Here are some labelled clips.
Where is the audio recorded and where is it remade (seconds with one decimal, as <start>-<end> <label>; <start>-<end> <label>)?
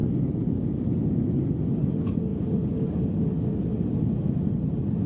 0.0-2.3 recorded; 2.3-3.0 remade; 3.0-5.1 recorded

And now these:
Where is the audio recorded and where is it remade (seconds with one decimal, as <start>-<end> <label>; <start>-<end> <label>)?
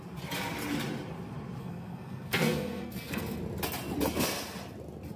0.0-1.6 recorded; 1.6-3.4 remade; 3.4-5.2 recorded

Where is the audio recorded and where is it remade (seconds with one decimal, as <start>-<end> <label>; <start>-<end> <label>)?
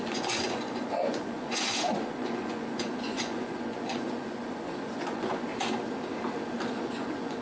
0.0-5.5 remade; 5.5-6.7 recorded; 6.7-7.4 remade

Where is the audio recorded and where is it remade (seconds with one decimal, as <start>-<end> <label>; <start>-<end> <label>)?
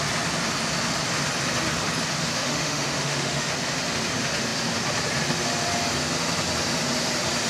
0.0-2.3 recorded; 2.3-3.5 remade; 3.5-7.5 recorded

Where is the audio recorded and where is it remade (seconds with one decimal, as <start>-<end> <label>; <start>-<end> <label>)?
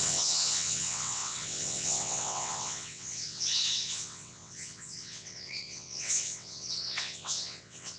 0.0-8.0 remade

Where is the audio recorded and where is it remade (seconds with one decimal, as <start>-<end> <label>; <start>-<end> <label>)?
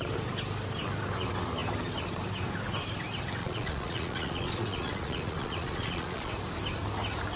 0.0-3.4 recorded; 3.4-6.3 remade; 6.3-7.4 recorded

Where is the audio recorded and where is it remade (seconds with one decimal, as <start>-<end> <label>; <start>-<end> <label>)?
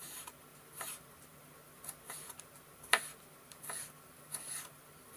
0.0-5.2 recorded